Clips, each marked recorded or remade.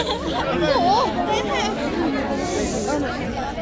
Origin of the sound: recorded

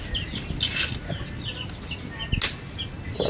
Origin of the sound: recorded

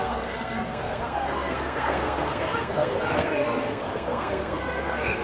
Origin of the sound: remade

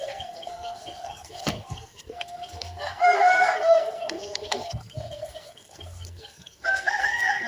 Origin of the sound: remade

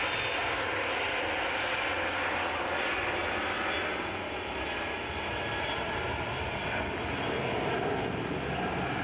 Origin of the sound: recorded